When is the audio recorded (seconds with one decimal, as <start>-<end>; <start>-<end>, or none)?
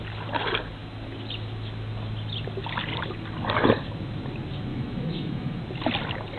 0.0-4.7; 5.6-6.4